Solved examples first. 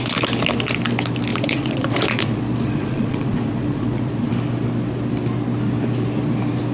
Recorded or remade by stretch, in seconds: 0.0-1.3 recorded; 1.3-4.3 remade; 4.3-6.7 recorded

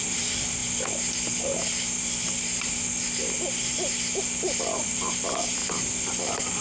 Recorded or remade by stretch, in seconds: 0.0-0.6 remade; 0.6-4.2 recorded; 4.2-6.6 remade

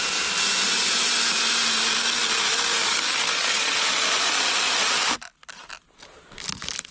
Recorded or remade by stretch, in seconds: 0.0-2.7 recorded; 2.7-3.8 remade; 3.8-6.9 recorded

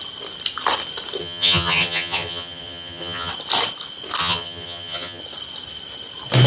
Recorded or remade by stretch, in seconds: 0.0-1.2 recorded; 1.2-3.3 remade; 3.3-4.2 recorded; 4.2-5.2 remade; 5.2-6.5 recorded

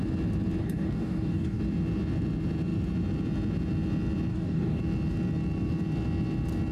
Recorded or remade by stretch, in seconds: 0.0-0.6 recorded; 0.6-1.6 remade; 1.6-4.3 recorded; 4.3-4.8 remade; 4.8-6.7 recorded